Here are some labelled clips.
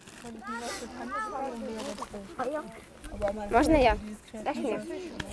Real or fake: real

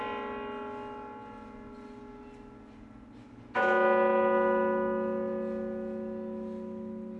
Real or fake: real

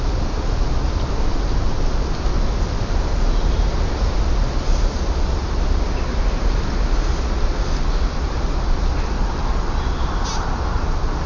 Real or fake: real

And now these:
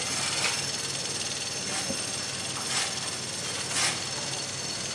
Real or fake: real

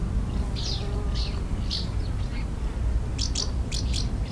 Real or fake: real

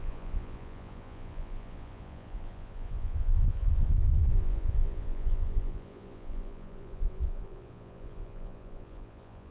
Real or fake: fake